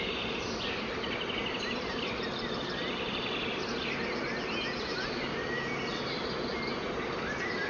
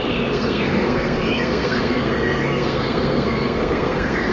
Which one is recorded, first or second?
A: first